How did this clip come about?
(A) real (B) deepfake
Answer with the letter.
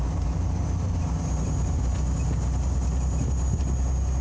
A